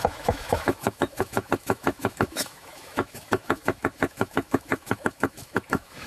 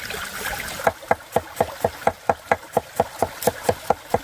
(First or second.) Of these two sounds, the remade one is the first